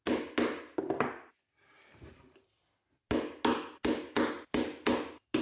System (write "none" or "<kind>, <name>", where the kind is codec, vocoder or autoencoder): none